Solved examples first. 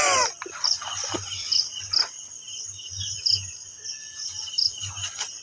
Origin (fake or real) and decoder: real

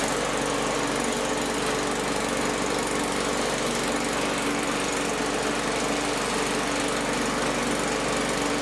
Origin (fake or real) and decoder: real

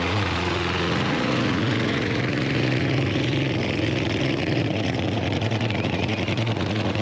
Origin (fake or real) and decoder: fake, vocoder, Vocos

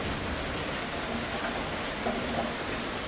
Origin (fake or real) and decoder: real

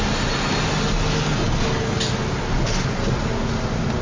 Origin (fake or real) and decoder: real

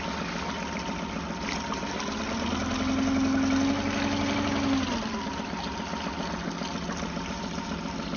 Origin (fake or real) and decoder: real